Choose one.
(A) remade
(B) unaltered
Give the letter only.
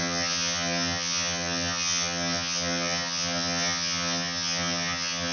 A